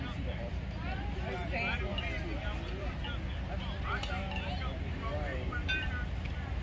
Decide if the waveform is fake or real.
real